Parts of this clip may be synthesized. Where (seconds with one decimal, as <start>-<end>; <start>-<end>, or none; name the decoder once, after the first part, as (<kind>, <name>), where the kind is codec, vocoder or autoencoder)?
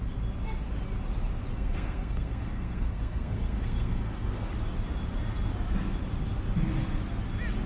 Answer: 1.5-4.5 (codec, SNAC)